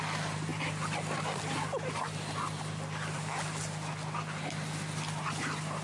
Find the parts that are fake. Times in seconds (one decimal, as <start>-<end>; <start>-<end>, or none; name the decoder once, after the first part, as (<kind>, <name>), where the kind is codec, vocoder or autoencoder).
none